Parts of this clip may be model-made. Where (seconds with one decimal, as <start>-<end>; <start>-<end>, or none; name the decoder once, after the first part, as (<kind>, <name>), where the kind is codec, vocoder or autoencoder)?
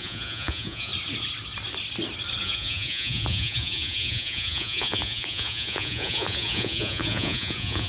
0.0-0.9 (vocoder, Vocos); 2.4-7.9